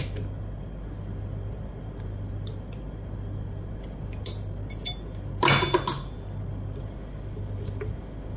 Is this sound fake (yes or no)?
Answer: no